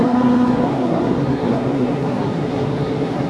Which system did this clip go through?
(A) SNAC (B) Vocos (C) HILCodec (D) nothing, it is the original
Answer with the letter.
A